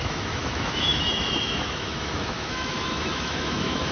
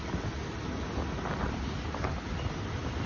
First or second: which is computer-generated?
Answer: first